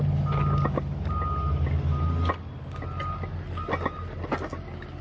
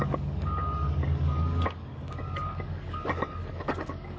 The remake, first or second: second